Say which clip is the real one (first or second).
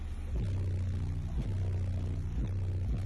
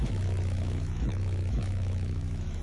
first